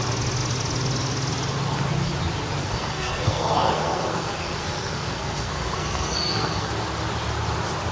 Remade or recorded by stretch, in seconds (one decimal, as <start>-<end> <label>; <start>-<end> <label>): 0.0-2.6 recorded; 2.6-6.7 remade; 6.7-7.9 recorded